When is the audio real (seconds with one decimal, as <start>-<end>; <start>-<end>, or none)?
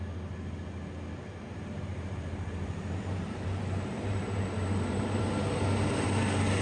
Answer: 0.0-1.9; 5.2-6.6